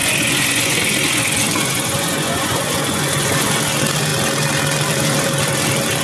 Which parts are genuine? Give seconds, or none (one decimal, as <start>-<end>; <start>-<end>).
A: 3.6-6.0